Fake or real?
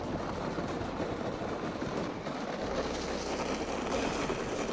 real